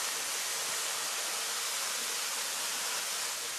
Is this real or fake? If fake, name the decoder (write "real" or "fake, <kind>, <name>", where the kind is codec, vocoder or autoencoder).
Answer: real